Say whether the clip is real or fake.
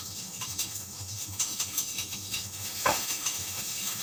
fake